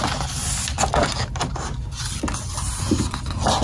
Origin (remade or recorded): recorded